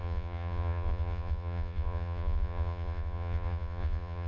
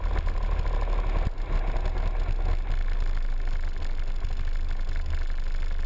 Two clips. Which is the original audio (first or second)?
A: second